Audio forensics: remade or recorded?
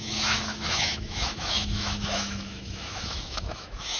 remade